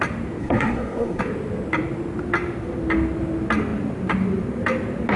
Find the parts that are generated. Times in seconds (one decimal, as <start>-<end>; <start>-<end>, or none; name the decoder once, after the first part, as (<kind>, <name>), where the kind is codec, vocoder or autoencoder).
0.4-1.2 (codec, SNAC)